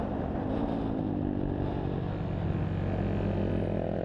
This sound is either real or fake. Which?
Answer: real